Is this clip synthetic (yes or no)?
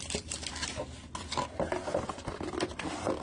no